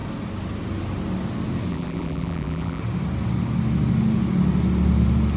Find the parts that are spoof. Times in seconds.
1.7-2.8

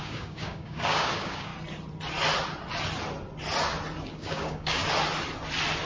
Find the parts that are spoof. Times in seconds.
0.0-1.5; 4.1-4.8

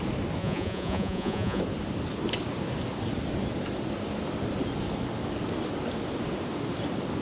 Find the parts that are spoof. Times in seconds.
0.4-1.6

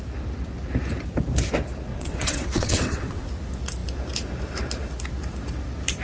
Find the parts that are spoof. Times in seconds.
1.9-3.3